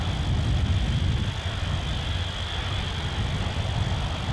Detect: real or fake fake